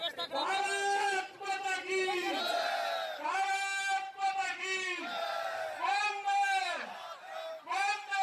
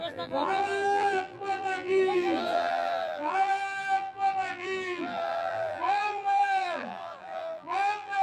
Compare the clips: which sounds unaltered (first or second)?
first